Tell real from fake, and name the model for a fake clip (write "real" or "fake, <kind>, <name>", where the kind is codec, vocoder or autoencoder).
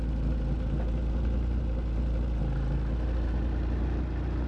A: real